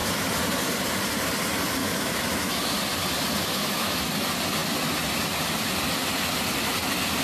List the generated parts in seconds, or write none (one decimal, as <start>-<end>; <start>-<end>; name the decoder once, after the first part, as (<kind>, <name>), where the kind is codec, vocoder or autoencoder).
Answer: 1.8-2.7 (autoencoder, DAC-VAE); 3.4-4.0